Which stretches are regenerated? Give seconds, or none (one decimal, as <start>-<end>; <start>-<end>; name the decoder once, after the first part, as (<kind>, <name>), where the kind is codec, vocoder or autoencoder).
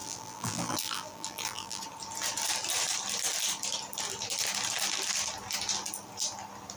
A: 0.0-1.8 (vocoder, BigVGAN v2)